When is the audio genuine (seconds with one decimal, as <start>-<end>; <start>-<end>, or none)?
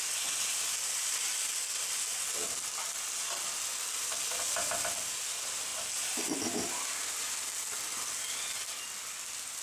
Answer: 0.0-9.6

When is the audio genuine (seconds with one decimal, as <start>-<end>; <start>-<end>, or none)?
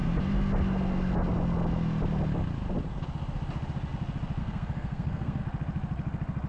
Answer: 0.0-4.4; 5.4-6.5